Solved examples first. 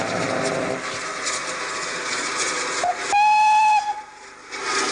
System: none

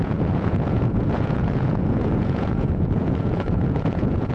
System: vocoder, Vocos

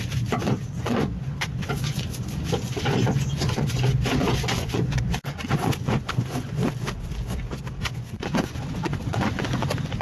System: vocoder, Vocos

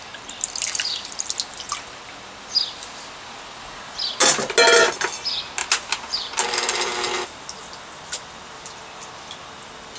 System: none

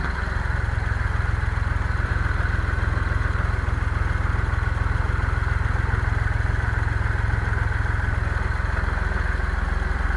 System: none